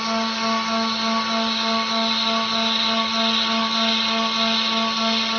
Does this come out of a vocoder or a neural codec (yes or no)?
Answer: no